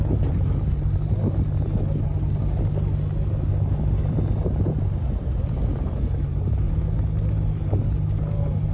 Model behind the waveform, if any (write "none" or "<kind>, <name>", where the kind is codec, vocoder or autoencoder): none